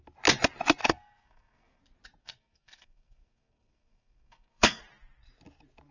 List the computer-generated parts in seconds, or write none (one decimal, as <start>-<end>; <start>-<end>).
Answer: 0.8-1.8; 2.2-4.8